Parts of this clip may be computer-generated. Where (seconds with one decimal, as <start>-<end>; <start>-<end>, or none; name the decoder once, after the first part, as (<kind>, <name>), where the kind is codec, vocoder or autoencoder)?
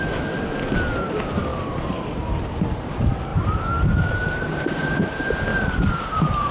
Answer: 1.5-2.6 (vocoder, BigVGAN v2); 3.3-5.0; 5.5-6.5